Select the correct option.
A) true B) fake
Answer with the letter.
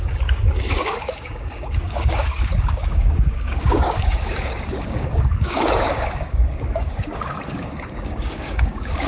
B